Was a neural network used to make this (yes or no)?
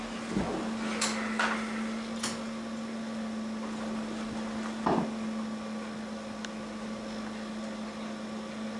no